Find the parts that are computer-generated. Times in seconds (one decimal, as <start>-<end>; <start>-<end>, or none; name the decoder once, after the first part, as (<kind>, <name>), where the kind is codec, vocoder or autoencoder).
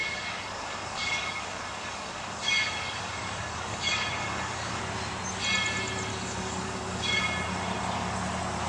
0.0-4.8 (codec, DAC); 6.1-7.2